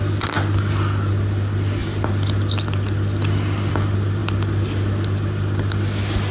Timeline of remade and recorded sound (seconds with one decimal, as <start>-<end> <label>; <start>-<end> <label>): 0.0-6.3 recorded